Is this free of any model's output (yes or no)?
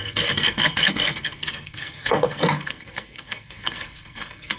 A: no